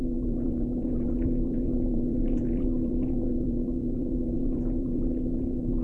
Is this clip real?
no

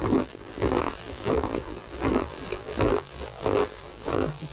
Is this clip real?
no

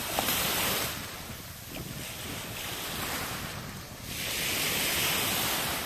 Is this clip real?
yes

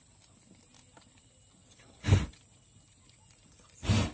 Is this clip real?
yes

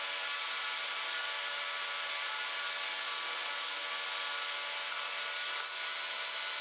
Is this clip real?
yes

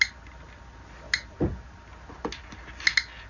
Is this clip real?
yes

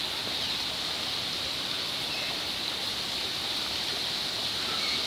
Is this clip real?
yes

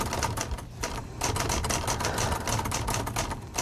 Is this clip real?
yes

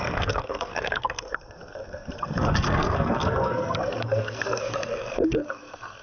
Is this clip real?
no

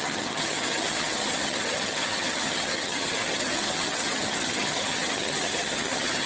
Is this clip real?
no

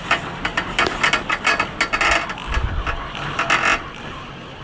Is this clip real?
yes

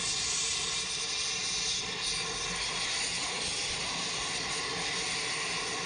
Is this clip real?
yes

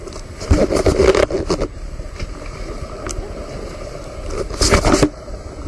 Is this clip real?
yes